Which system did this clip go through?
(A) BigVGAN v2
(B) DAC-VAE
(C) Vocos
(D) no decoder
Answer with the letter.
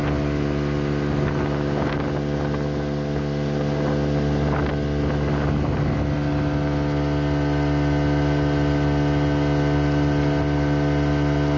D